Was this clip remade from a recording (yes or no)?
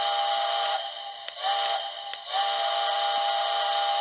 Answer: no